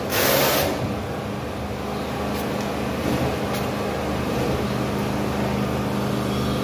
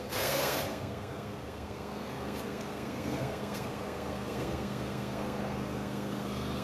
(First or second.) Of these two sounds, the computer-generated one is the second